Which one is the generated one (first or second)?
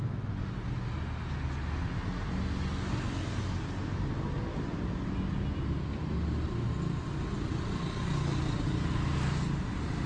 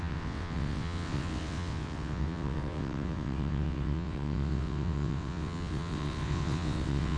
second